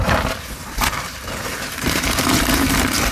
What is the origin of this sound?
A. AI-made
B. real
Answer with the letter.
A